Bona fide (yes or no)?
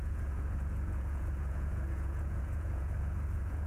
no